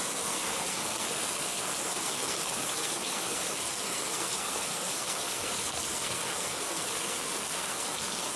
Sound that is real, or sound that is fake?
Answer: fake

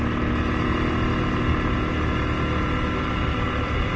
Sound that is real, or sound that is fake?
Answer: real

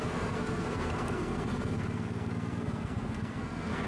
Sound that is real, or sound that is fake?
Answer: fake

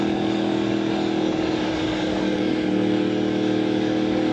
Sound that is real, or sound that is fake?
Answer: fake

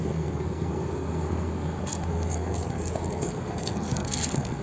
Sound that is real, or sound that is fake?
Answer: fake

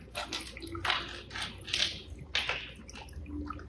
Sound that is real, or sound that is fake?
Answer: real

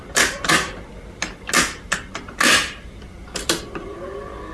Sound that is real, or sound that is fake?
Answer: real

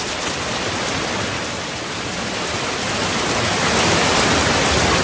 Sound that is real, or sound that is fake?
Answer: real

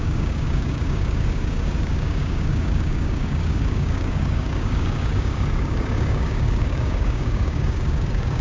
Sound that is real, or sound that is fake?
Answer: fake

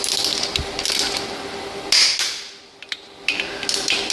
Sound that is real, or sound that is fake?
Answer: real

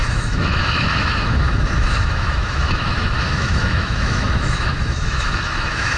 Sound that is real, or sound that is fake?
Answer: fake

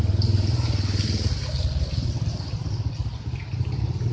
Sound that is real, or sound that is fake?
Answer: real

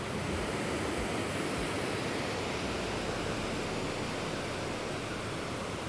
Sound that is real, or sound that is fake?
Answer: real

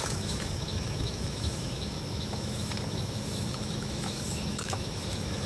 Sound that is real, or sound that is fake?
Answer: fake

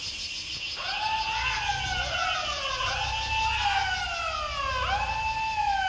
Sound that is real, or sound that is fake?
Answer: real